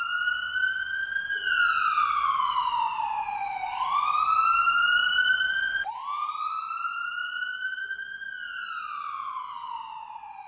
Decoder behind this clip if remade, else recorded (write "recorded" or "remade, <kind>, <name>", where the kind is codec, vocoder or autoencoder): recorded